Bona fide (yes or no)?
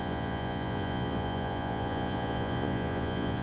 no